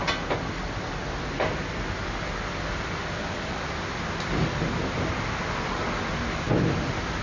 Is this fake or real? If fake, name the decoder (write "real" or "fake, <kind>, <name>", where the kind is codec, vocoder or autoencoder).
real